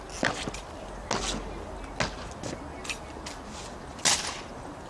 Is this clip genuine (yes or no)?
yes